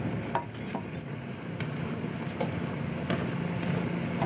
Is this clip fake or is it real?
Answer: real